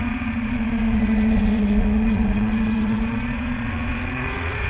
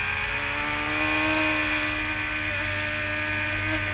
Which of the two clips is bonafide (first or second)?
second